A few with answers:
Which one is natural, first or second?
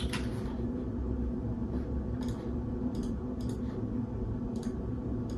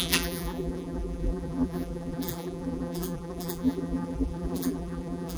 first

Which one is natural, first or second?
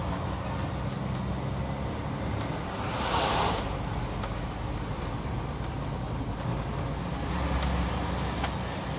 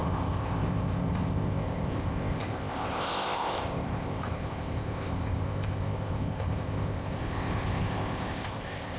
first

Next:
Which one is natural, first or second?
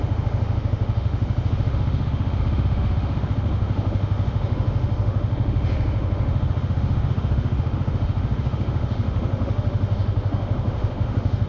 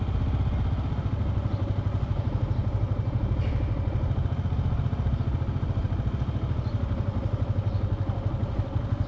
second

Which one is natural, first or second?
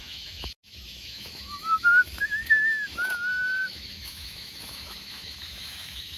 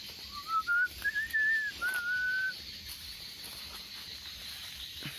second